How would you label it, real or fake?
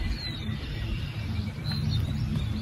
fake